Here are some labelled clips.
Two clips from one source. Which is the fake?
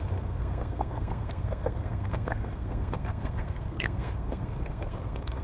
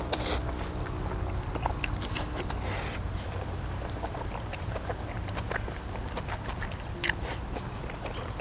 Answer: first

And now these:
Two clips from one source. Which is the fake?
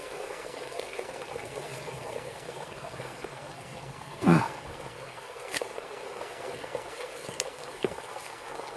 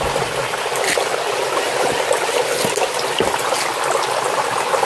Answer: first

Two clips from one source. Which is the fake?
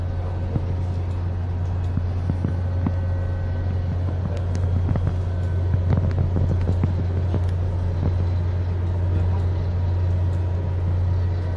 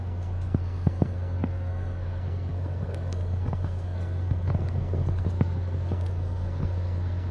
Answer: second